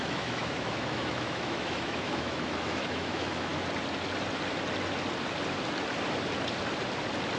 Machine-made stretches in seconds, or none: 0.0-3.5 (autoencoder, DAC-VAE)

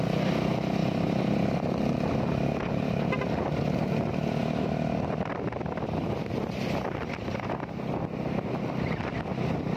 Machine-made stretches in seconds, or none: none